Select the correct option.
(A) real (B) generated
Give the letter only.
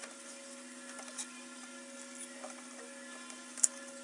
A